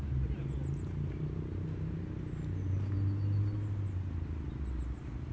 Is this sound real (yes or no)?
yes